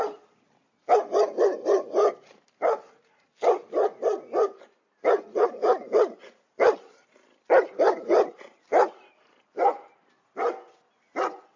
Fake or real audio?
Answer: real